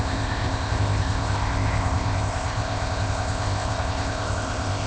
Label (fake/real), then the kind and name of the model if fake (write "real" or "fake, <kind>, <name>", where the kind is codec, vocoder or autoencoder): fake, codec, ZipCodec